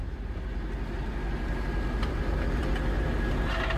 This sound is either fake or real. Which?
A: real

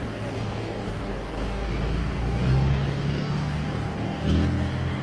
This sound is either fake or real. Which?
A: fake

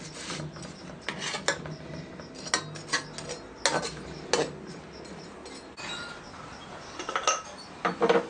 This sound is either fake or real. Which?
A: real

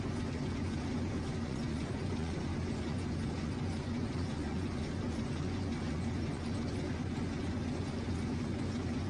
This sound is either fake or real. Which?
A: fake